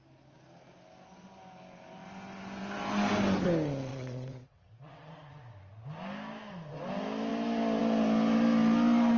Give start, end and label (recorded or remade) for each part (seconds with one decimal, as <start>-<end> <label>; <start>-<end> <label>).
0.0-3.9 recorded; 3.9-5.1 remade; 5.1-9.2 recorded